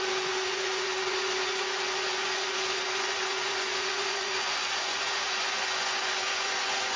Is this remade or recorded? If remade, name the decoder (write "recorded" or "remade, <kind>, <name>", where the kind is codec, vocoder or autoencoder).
remade, vocoder, Vocos